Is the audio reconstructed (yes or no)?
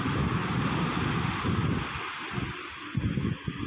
no